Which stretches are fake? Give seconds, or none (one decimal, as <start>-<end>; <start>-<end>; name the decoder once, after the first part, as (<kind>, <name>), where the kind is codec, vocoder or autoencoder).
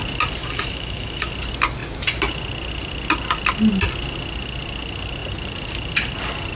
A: 0.4-1.3 (autoencoder, DAC-VAE)